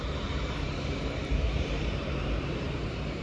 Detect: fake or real fake